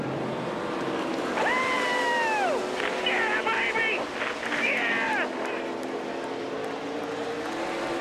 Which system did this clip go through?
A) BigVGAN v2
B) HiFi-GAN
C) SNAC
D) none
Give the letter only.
D